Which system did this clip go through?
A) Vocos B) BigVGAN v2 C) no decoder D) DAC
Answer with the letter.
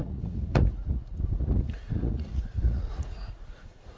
A